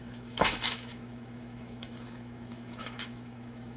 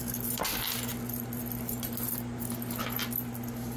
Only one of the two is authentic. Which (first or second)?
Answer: second